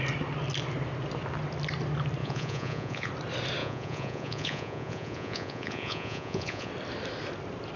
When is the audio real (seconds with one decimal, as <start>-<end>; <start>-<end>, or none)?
0.0-2.2; 3.1-3.6; 6.7-7.8